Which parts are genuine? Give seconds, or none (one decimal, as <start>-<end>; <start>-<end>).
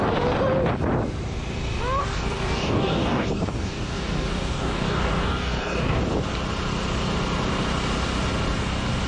0.0-2.0; 6.0-9.1